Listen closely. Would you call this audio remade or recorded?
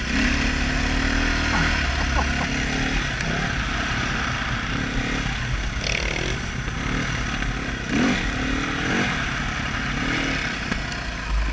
recorded